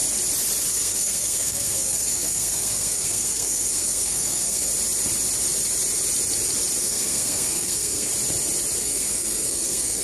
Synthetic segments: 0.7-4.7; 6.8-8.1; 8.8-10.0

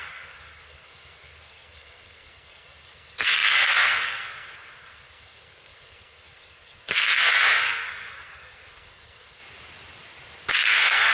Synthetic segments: 0.0-9.4; 10.5-11.1

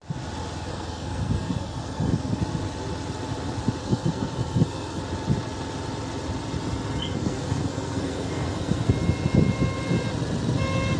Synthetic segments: 0.7-2.4; 3.8-5.0; 7.0-8.9

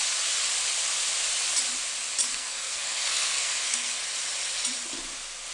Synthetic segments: 2.3-4.0

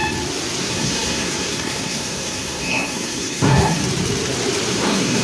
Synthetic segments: 0.6-3.8; 4.7-5.2

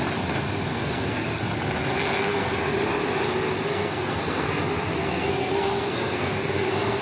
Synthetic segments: 0.7-1.4; 2.2-2.7; 3.7-4.6; 5.0-7.0